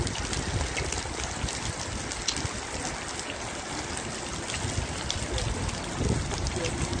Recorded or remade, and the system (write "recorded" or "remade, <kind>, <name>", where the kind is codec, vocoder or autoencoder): recorded